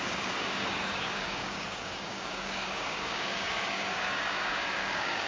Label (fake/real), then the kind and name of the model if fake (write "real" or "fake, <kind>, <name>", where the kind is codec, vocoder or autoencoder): fake, codec, DAC